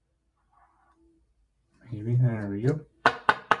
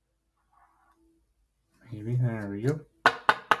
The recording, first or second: second